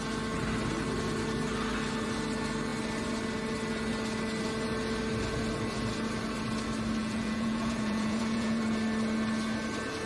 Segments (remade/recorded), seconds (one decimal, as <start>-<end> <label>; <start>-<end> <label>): 0.0-7.0 recorded; 7.0-8.6 remade; 8.6-10.1 recorded